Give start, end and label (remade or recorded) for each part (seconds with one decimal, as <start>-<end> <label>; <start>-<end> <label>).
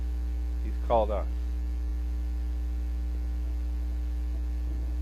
0.0-5.0 recorded